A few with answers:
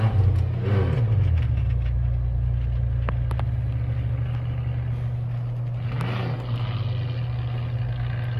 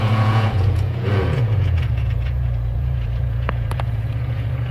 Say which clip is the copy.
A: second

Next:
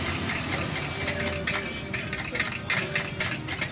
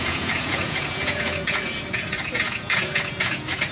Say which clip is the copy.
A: second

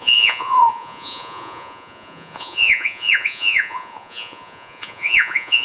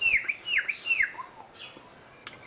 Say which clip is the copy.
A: first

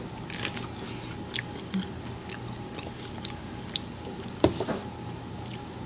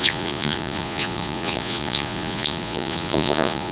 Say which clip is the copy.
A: second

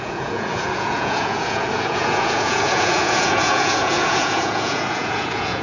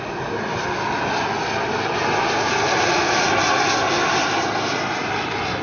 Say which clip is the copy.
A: first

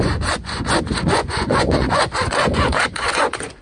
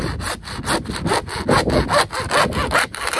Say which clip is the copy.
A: first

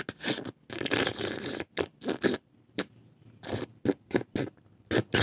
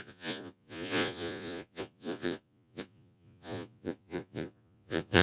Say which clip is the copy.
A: second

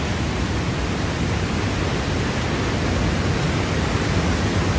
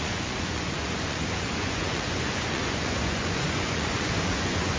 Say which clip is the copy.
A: second